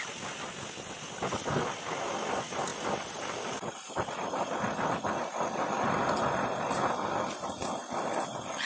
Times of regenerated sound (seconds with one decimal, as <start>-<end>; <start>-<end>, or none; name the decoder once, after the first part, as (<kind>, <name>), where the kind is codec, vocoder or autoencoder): none